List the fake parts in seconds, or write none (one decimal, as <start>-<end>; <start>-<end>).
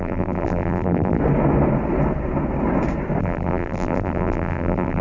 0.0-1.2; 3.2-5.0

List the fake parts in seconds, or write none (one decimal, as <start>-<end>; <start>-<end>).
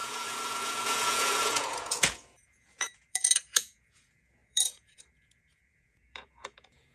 0.0-6.9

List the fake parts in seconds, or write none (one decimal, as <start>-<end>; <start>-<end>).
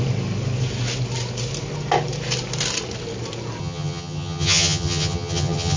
3.6-5.8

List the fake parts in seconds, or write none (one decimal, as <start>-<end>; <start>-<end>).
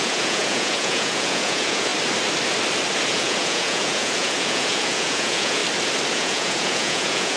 0.0-1.9; 3.1-5.6; 6.1-7.4